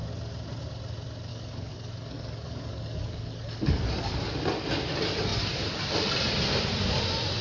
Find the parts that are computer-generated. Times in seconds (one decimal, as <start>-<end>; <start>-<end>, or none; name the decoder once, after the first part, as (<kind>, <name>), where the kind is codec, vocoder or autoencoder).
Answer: 1.3-4.2 (codec, DAC)